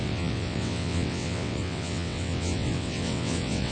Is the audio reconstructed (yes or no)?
yes